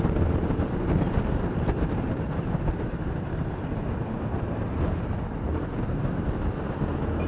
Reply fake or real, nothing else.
fake